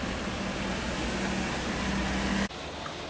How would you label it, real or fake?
real